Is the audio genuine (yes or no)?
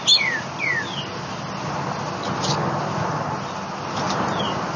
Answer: yes